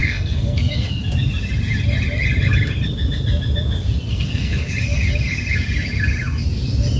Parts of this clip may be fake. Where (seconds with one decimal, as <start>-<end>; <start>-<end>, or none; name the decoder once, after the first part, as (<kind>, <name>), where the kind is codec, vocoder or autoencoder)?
0.0-1.0 (codec, SNAC); 4.1-4.7